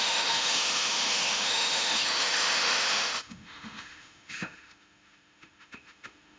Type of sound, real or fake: fake